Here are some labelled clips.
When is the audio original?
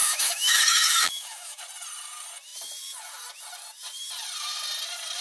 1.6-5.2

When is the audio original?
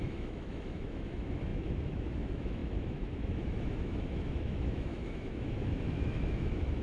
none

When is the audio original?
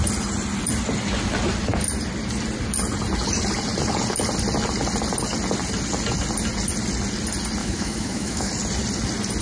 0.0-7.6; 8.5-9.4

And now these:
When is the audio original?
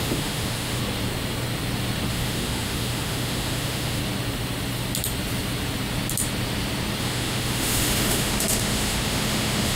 0.8-2.1; 4.0-7.0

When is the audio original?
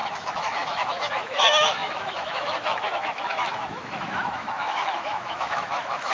none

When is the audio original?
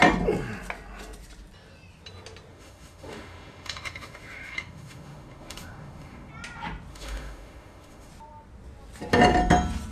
0.0-2.5; 6.3-6.9; 8.1-9.9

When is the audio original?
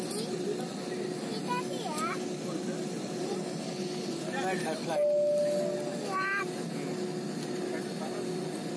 0.0-5.9; 6.4-8.8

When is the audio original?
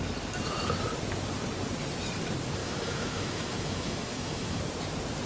0.0-2.6; 4.6-5.3